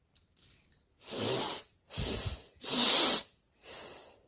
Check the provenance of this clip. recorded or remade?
recorded